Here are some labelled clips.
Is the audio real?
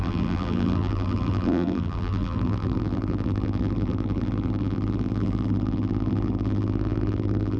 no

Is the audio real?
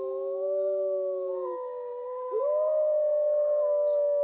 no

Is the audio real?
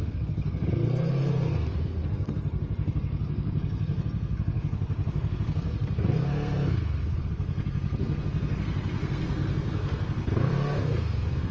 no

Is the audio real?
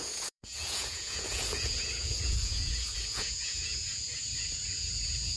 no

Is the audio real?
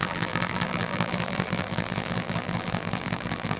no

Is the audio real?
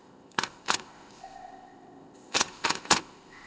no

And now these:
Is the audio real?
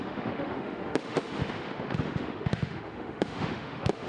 no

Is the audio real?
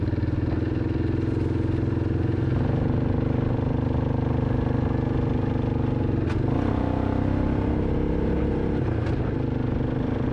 yes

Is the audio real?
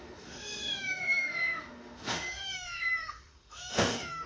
no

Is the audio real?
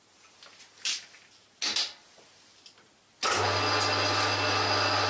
yes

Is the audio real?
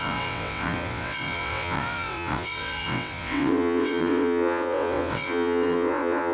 no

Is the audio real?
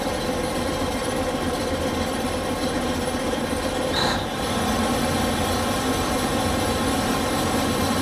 no